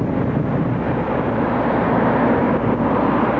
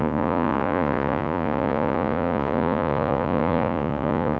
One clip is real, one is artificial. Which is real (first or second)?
first